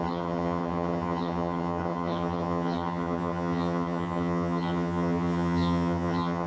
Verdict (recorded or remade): remade